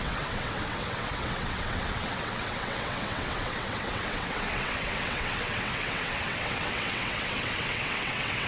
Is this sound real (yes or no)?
no